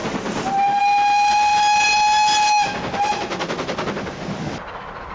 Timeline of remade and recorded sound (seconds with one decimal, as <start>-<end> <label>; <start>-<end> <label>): 0.0-5.1 recorded